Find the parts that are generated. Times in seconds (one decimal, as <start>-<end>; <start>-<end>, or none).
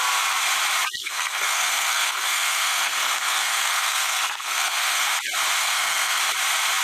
1.0-5.1; 5.6-6.2